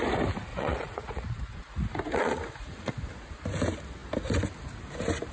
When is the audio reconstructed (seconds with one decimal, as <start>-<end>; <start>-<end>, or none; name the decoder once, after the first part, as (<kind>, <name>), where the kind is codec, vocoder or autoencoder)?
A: 0.5-2.9 (vocoder, Vocos)

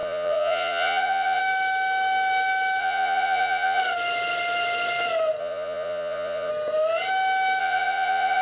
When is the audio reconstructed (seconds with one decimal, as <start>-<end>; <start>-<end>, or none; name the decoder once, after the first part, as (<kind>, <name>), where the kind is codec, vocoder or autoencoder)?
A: 0.0-1.4 (vocoder, Vocos); 2.8-3.8; 5.4-6.5; 7.6-8.4

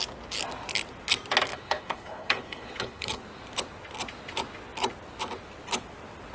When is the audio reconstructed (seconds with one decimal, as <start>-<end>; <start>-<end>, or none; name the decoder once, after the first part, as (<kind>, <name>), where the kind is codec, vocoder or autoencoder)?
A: 1.5-3.2 (codec, HILCodec)

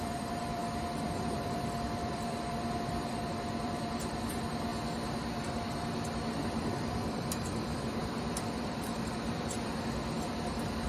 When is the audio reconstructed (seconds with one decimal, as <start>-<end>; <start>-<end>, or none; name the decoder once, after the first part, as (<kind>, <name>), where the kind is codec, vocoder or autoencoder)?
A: 0.0-4.7 (vocoder, BigVGAN v2); 6.6-10.9

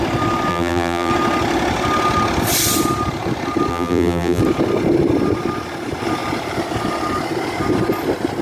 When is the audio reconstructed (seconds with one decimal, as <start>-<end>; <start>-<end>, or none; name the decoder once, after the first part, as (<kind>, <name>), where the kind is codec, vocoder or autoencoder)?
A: 0.5-1.1 (vocoder, BigVGAN v2); 3.7-4.4

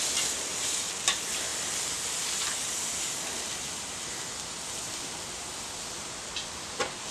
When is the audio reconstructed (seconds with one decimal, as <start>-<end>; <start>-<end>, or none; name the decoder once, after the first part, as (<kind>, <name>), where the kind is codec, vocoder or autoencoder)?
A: none